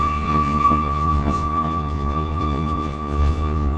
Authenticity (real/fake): fake